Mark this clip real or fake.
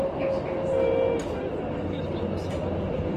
real